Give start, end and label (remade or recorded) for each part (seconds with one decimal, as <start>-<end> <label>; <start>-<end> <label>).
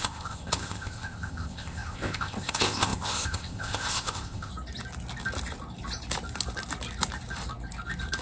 0.0-4.5 remade; 4.5-8.2 recorded